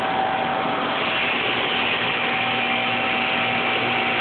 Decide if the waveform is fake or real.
real